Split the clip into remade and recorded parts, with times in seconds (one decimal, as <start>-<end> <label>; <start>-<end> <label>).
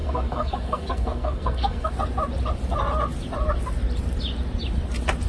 0.0-1.9 remade; 1.9-5.3 recorded